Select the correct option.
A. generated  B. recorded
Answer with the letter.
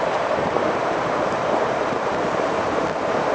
A